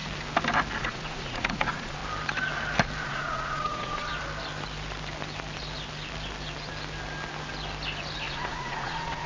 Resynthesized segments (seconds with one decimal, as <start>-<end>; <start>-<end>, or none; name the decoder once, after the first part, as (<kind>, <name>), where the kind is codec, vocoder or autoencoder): 0.8-2.0 (vocoder, Vocos); 3.0-4.1; 8.3-9.3